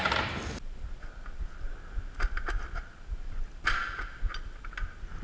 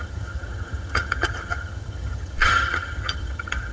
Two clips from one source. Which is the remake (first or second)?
second